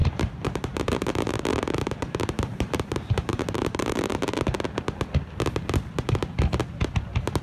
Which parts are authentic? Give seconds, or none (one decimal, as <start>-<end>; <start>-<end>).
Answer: 4.4-7.4